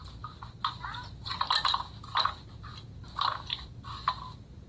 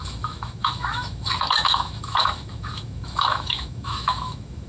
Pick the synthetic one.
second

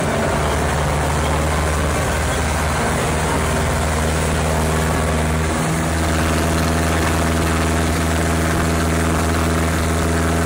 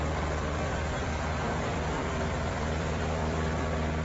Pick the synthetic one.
second